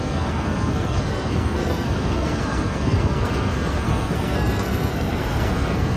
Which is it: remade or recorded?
remade